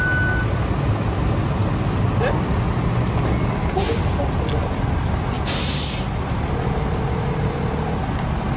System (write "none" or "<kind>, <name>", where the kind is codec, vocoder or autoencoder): none